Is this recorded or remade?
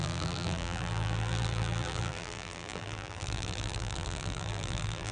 remade